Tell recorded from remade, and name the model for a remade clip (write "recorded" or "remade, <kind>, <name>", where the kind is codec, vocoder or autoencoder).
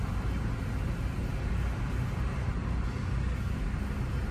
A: recorded